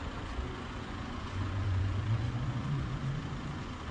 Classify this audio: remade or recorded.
remade